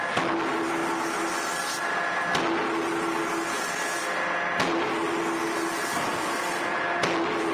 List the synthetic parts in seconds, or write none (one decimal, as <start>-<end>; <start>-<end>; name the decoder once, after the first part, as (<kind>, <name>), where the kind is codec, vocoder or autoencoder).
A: none